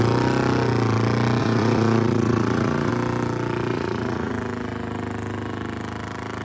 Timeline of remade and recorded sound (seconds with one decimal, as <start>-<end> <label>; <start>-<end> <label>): 0.0-1.4 recorded; 1.4-2.9 remade; 2.9-3.7 recorded; 3.7-4.3 remade; 4.3-6.4 recorded